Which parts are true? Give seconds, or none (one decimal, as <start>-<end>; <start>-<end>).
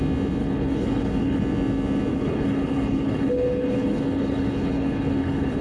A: 0.0-0.4; 1.4-2.1